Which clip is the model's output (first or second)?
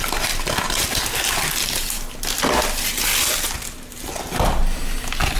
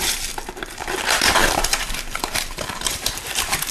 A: second